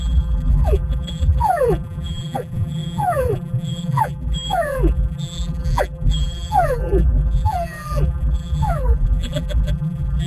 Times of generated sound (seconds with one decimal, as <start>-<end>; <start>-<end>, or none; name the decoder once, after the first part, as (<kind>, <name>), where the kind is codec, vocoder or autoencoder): 0.0-10.3 (vocoder, BigVGAN v2)